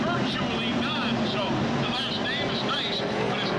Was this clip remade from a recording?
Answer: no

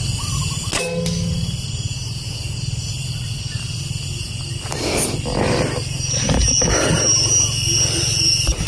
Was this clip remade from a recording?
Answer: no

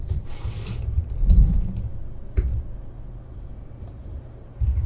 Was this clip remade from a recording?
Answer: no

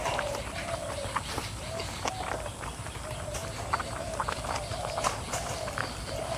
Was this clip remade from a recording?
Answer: no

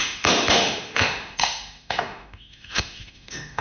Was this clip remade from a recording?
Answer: yes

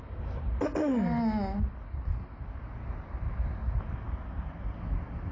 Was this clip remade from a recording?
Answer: no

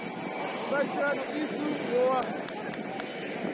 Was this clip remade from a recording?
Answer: no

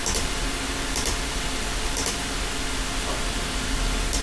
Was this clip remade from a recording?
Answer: no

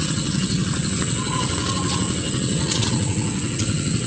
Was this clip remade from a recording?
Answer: yes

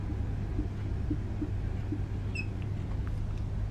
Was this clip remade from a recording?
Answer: no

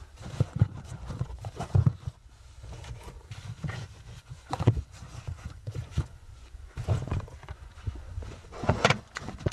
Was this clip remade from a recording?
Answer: yes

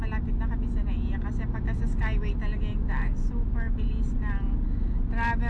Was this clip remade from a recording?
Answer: no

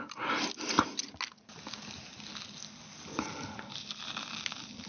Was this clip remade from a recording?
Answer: no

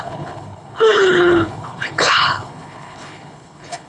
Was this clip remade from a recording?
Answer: yes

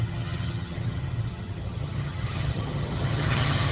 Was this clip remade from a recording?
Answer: yes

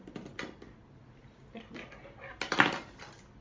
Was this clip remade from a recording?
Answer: no